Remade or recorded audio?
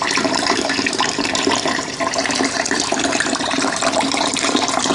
remade